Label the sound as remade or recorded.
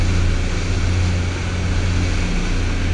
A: recorded